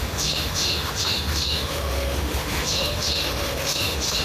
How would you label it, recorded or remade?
remade